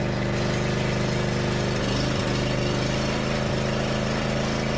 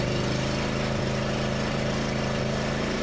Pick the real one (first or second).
first